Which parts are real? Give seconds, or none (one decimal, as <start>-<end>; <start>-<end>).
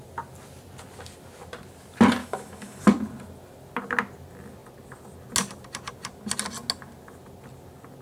0.0-2.2; 2.8-8.0